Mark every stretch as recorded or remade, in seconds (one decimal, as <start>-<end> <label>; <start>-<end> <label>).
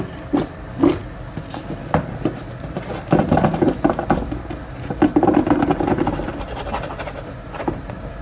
0.0-8.2 recorded